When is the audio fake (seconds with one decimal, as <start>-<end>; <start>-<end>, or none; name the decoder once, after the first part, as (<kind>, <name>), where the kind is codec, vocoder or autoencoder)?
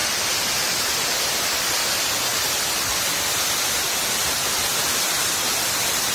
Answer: 0.0-3.7 (vocoder, BigVGAN v2); 4.2-6.1